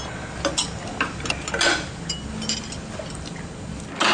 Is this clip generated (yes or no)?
no